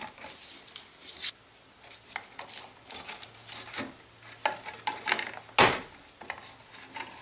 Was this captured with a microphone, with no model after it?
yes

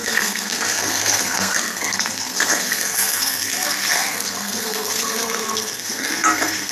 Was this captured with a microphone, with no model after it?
no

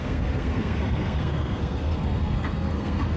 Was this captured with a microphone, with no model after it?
no